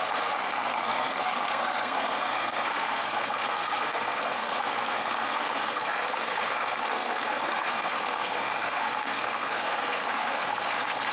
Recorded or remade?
remade